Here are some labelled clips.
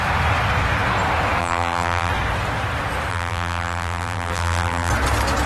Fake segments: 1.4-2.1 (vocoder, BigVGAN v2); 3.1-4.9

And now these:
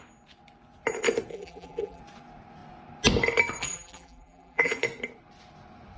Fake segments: 1.3-2.0 (vocoder, BigVGAN v2); 3.6-4.7

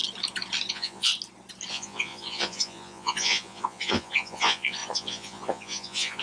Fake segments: 0.7-1.1 (vocoder, Vocos); 1.7-6.2

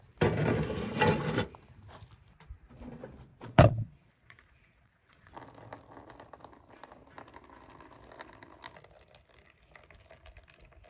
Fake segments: 3.3-5.3 (vocoder, Vocos)